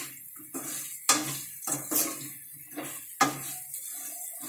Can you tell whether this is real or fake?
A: real